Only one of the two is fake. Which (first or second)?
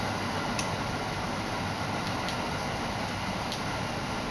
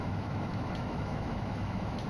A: second